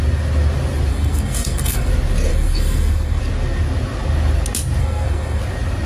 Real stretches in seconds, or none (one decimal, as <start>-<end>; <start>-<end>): 0.0-0.9; 1.9-2.3; 3.2-4.8; 5.4-5.9